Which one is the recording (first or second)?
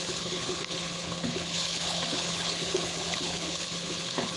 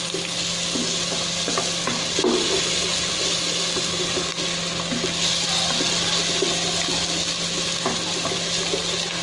second